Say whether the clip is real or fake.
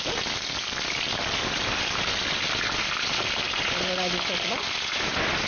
real